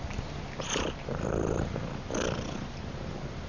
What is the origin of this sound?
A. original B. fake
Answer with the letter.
A